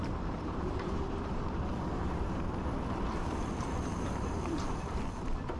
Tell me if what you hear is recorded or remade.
remade